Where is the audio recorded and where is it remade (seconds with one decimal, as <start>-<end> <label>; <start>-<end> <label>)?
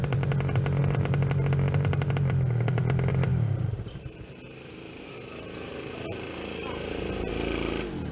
0.0-3.1 recorded; 3.1-7.3 remade; 7.3-8.1 recorded